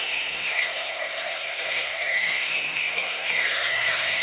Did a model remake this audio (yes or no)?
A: yes